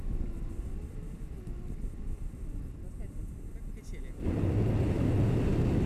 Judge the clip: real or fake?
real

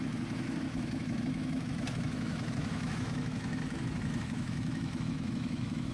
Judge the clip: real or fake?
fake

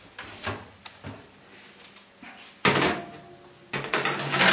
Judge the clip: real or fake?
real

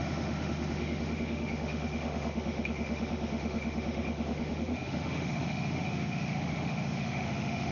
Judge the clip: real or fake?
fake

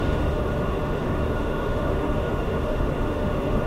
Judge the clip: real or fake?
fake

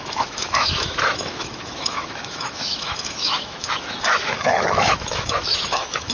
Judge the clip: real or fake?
fake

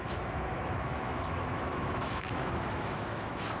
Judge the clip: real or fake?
fake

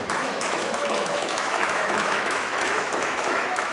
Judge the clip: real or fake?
fake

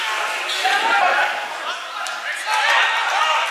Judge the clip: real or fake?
real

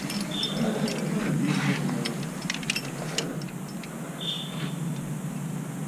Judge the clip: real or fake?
real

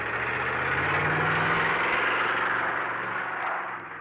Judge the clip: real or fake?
real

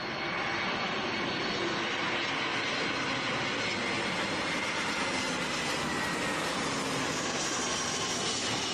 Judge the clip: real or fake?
real